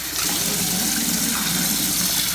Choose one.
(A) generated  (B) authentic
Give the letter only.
B